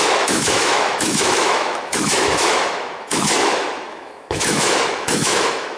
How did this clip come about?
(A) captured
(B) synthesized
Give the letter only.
B